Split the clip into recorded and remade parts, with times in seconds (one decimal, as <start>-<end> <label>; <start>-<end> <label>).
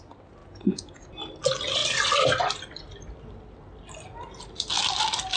0.0-0.4 recorded; 0.4-1.1 remade; 1.1-5.4 recorded